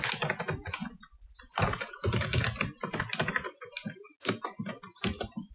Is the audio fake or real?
real